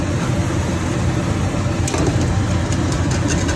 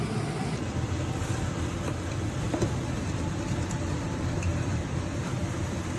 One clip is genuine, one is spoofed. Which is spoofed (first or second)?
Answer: second